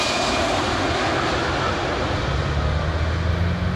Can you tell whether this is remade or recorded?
recorded